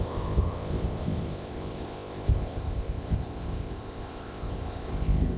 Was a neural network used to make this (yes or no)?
yes